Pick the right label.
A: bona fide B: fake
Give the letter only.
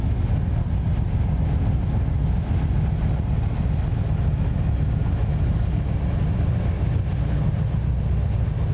A